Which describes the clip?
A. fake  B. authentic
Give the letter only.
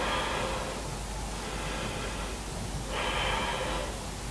B